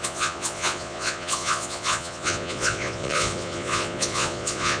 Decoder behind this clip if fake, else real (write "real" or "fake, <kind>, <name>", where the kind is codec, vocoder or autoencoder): fake, vocoder, Vocos